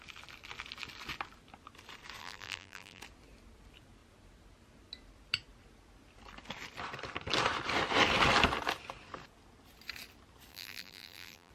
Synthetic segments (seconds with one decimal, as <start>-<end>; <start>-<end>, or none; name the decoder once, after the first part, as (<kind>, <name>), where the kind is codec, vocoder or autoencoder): 2.2-3.0 (vocoder, BigVGAN v2); 10.5-11.5